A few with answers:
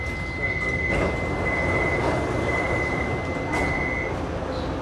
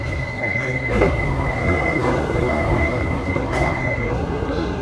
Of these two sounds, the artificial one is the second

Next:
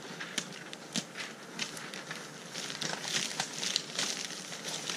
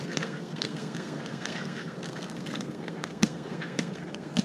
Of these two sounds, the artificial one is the second